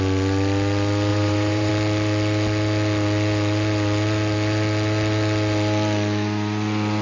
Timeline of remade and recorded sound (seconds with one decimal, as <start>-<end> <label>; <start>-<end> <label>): 0.0-1.1 recorded; 1.1-1.7 remade; 1.7-7.0 recorded